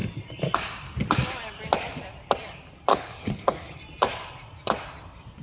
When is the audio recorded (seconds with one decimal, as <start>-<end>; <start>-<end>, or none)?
0.0-2.9; 3.8-5.4

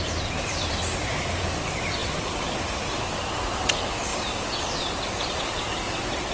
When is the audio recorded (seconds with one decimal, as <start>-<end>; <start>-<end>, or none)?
0.0-6.3

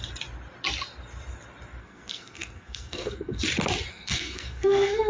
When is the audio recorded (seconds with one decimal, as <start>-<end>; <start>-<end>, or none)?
0.0-1.8; 3.4-3.9

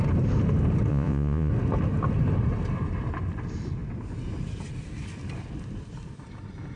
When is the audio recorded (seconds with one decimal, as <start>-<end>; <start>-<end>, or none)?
0.0-0.9; 1.5-6.8

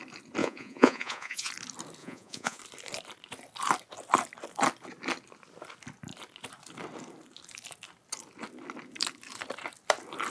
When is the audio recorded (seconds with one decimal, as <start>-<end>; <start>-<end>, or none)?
0.0-0.4; 1.5-2.0; 2.6-10.3